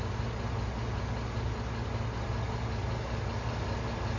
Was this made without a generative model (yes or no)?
yes